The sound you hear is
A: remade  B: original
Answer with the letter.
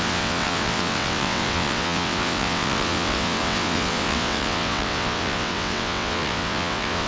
A